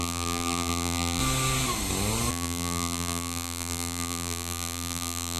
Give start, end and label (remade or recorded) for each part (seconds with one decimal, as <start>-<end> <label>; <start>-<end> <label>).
0.0-1.2 remade; 1.2-2.3 recorded; 2.3-5.4 remade